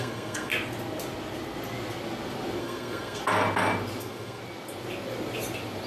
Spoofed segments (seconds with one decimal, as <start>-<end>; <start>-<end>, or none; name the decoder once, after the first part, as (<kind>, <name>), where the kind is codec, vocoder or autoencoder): 0.0-0.5 (codec, SNAC); 2.6-3.2; 4.0-4.4